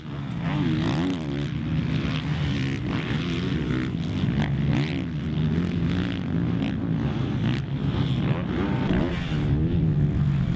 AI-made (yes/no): no